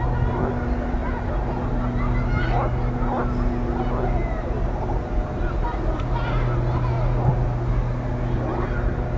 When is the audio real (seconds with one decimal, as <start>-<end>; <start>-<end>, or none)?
0.0-9.2